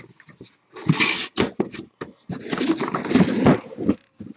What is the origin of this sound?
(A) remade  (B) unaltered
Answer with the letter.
B